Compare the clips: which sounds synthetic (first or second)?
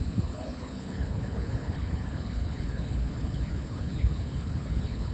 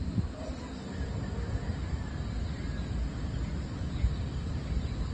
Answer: first